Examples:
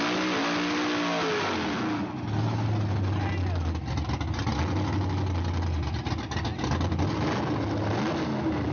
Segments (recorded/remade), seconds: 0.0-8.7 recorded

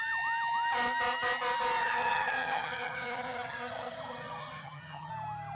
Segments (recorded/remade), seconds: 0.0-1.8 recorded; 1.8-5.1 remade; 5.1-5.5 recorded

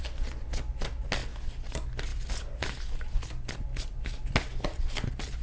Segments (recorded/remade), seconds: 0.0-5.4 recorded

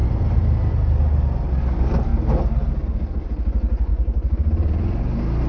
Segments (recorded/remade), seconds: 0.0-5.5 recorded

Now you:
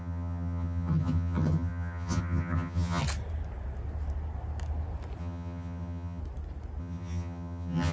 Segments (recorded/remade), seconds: 0.0-3.0 remade; 3.0-5.2 recorded; 5.2-6.2 remade; 6.2-6.8 recorded; 6.8-7.9 remade

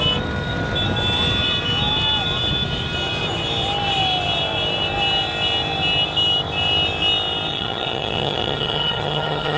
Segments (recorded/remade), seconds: 0.0-7.5 recorded; 7.5-9.6 remade

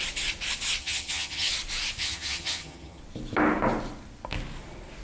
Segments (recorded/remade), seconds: 0.0-0.8 recorded; 0.8-1.5 remade; 1.5-2.0 recorded; 2.0-3.0 remade; 3.0-5.0 recorded